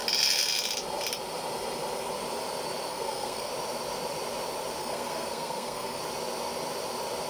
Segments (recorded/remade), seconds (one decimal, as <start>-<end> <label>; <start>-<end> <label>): 0.0-2.9 recorded; 2.9-3.5 remade; 3.5-4.8 recorded; 4.8-6.0 remade; 6.0-7.3 recorded